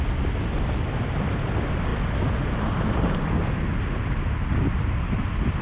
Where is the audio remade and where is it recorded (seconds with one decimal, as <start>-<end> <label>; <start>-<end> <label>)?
0.0-5.6 recorded